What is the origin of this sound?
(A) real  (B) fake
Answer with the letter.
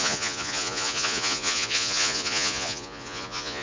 B